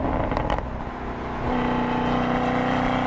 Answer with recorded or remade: recorded